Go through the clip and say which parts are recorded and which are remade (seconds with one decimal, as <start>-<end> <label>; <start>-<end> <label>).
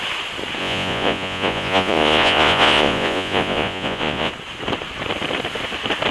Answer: 0.0-0.6 recorded; 0.6-4.3 remade; 4.3-6.1 recorded